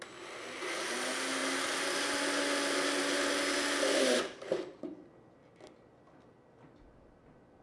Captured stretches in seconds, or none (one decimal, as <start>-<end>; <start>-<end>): 0.0-7.6